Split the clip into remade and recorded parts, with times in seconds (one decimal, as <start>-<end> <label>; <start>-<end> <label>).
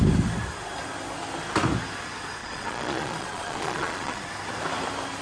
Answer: 0.0-2.4 recorded; 2.4-4.3 remade; 4.3-5.2 recorded